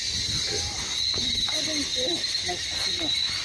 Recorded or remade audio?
recorded